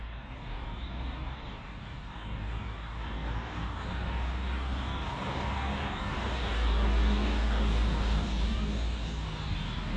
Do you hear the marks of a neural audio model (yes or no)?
yes